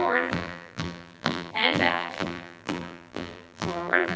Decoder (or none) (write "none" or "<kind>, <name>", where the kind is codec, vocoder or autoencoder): vocoder, BigVGAN v2